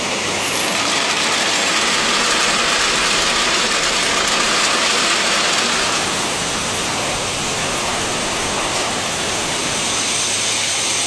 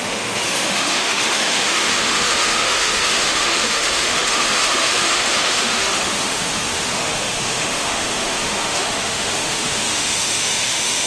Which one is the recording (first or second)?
first